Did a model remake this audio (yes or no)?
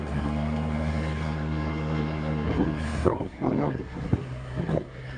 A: yes